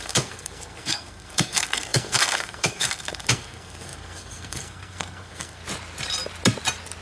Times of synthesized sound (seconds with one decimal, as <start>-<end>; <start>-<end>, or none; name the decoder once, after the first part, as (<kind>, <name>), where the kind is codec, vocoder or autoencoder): 0.0-5.6 (codec, SNAC)